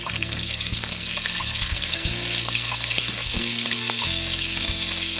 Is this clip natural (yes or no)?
no